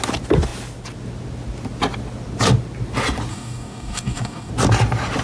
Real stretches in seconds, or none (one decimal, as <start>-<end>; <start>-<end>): 0.0-3.3; 4.5-5.2